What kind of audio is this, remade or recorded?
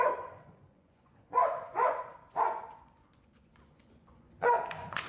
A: remade